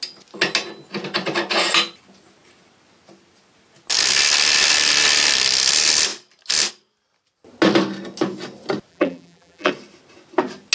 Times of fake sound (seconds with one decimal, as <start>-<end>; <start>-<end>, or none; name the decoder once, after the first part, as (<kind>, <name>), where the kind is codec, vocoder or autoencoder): 8.9-9.7 (vocoder, BigVGAN v2)